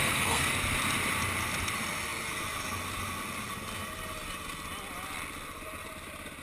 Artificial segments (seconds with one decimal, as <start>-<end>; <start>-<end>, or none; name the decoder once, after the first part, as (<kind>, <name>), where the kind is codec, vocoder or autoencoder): 0.0-0.5 (codec, SNAC)